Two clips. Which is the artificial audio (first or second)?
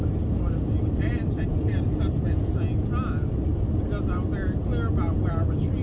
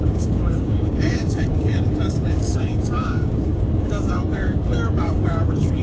second